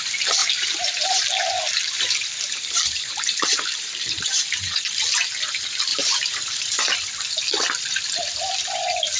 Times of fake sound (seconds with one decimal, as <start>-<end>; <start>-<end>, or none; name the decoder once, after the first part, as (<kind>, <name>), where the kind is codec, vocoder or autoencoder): 0.4-4.8 (vocoder, BigVGAN v2); 5.9-6.8